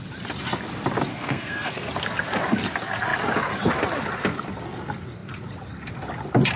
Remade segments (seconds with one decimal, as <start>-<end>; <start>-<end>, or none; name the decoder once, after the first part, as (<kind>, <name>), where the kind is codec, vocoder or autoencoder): 1.1-1.7 (codec, SNAC)